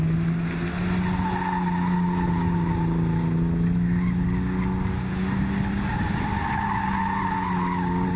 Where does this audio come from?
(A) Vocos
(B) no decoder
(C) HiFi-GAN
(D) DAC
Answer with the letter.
B